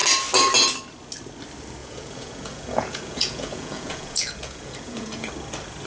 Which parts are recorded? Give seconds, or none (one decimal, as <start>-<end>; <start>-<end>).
0.0-1.8; 5.3-5.9